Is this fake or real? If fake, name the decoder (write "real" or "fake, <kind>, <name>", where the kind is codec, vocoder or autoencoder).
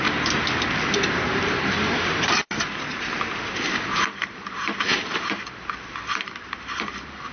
fake, vocoder, BigVGAN v2